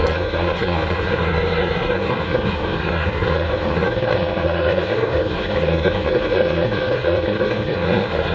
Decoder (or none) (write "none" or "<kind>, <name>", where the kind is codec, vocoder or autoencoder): codec, SNAC